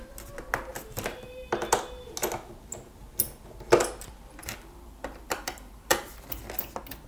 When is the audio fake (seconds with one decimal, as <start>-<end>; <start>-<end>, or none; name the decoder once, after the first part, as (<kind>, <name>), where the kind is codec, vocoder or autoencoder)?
0.7-1.5 (vocoder, BigVGAN v2); 4.4-6.4